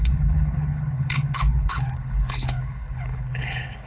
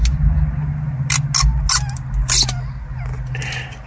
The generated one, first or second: first